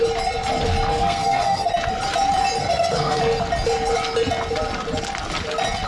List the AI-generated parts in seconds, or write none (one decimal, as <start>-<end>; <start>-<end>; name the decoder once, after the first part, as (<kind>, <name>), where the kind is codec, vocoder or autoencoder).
0.9-1.7 (codec, SNAC); 2.6-3.2